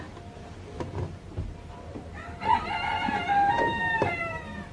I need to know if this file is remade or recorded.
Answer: remade